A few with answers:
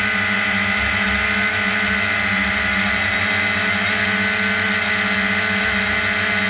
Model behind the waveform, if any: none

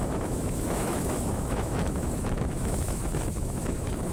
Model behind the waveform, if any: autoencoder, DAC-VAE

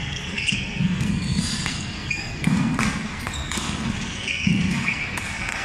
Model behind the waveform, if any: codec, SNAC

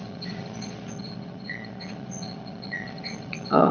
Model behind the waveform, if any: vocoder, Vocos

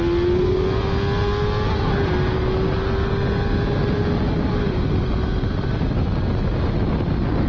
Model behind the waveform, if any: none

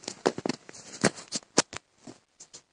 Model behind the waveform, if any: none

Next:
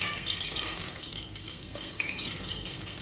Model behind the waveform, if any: codec, SNAC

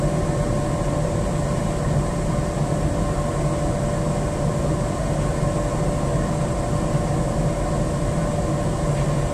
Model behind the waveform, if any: none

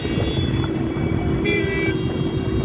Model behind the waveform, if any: none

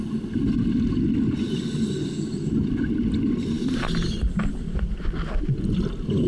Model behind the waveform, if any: none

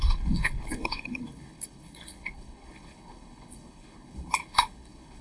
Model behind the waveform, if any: codec, HILCodec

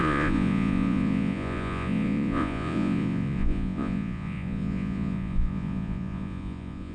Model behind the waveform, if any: vocoder, Vocos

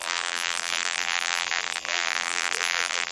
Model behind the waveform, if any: vocoder, BigVGAN v2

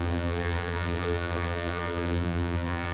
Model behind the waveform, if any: vocoder, BigVGAN v2